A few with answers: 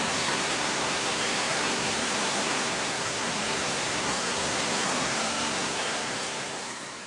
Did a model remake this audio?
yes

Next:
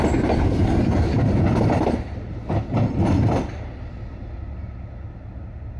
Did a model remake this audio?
no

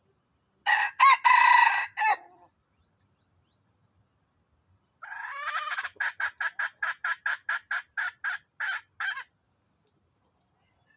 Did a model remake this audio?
no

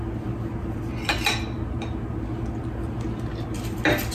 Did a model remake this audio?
no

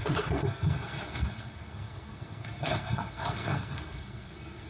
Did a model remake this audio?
yes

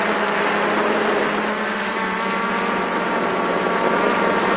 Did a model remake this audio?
no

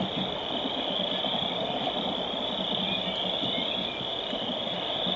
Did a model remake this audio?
yes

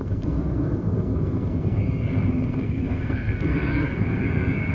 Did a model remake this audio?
yes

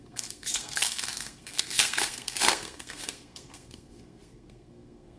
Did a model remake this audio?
yes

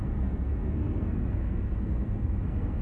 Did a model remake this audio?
yes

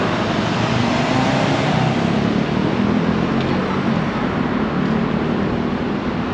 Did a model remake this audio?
no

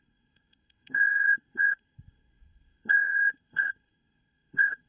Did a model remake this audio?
yes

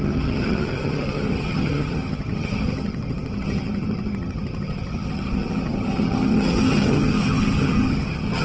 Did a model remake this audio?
yes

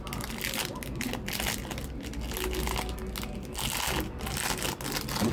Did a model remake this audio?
no